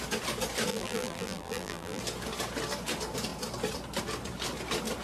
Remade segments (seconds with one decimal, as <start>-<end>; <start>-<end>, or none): 0.7-2.0